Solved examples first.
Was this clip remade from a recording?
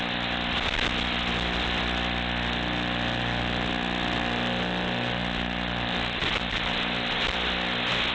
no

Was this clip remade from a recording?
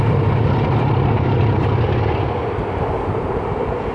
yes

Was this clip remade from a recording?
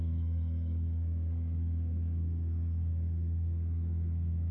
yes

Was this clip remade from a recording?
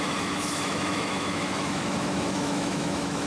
yes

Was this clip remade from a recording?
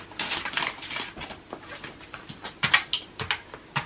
no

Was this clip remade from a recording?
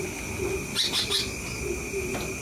no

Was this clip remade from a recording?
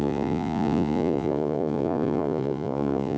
yes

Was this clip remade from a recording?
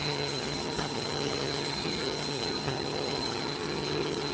yes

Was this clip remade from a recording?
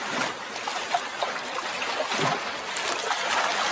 no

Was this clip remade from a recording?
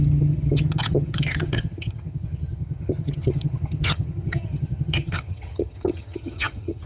yes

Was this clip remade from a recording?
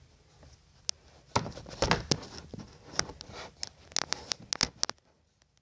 no